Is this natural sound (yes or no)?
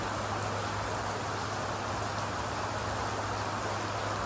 yes